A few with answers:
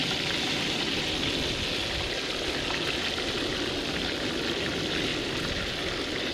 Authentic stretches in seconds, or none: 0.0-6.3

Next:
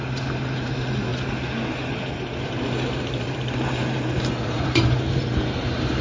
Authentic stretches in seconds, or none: 1.1-2.4

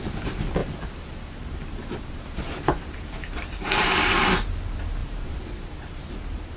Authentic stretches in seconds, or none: 0.0-0.6; 4.3-5.0; 6.1-6.6